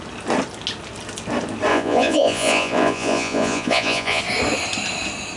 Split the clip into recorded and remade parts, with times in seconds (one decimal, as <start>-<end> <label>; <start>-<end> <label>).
0.0-1.7 recorded; 1.7-4.2 remade; 4.2-5.4 recorded